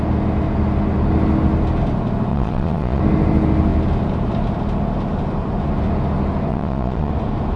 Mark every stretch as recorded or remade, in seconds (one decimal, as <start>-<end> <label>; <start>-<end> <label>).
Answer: 0.0-2.3 recorded; 2.3-3.0 remade; 3.0-6.5 recorded; 6.5-7.1 remade; 7.1-7.6 recorded